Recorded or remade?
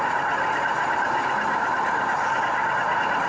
recorded